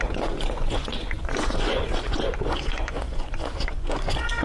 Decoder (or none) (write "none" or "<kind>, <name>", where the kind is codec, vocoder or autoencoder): vocoder, Vocos